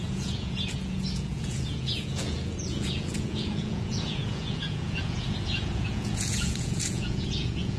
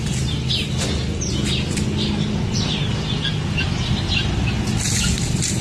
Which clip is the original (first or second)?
second